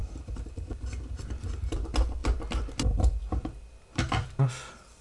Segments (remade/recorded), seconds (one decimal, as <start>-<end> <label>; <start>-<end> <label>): 0.0-5.0 recorded